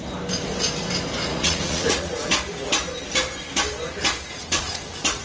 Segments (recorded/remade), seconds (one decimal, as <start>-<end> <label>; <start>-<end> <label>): 0.0-1.3 recorded; 1.3-2.3 remade; 2.3-4.4 recorded; 4.4-5.2 remade